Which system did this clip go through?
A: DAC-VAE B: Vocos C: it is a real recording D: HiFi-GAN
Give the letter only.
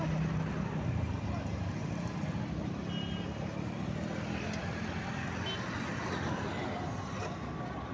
C